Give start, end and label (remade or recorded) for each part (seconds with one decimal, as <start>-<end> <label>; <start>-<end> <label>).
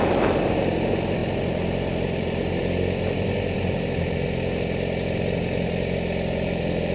0.0-6.9 recorded